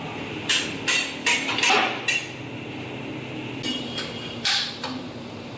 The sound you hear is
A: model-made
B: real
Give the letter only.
B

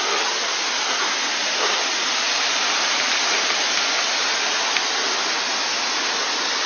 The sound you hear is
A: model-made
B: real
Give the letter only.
B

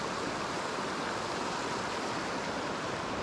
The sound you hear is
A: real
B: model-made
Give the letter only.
A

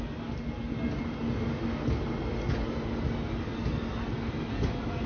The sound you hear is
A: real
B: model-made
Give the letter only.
A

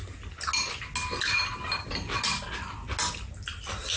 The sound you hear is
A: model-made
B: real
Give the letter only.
B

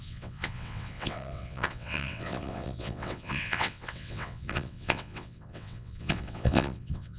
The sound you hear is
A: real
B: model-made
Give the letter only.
B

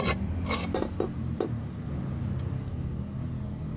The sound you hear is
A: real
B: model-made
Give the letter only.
A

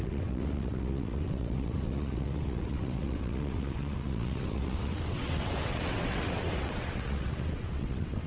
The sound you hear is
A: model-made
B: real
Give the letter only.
A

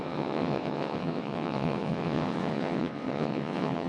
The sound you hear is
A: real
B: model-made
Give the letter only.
B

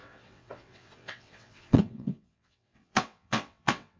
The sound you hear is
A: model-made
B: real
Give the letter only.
A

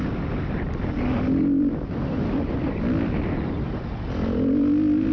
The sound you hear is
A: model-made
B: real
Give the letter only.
B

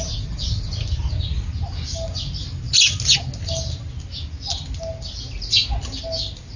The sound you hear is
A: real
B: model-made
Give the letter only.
A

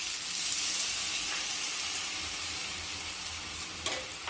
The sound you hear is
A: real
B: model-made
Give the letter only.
A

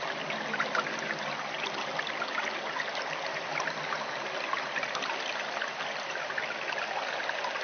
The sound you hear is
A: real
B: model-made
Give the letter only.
A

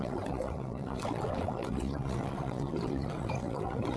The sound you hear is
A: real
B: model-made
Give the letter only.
B